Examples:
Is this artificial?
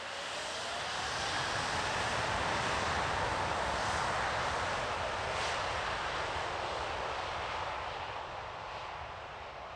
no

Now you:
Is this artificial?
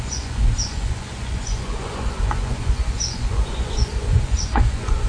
yes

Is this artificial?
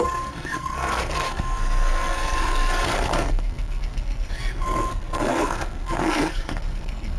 yes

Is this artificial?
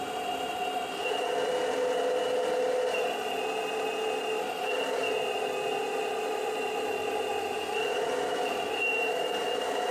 no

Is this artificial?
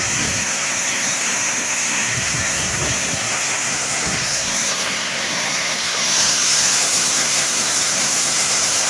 yes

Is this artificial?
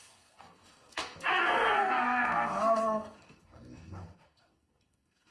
yes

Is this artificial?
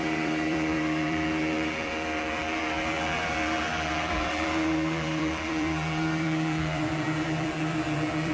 yes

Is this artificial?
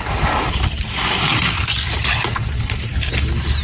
no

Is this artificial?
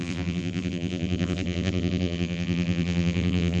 yes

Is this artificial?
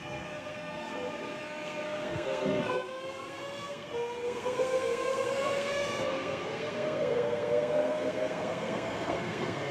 yes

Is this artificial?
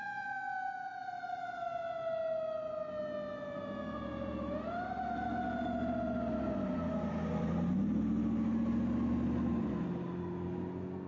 no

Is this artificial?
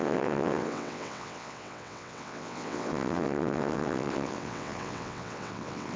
yes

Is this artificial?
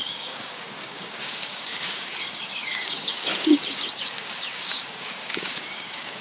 yes